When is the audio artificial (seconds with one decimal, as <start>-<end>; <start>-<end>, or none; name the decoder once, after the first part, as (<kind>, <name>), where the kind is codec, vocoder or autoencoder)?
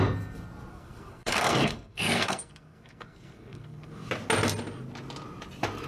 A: 0.7-4.1 (codec, SNAC)